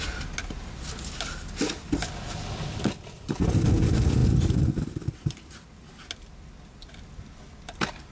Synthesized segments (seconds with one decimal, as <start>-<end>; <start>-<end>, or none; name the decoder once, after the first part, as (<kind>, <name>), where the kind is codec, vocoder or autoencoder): none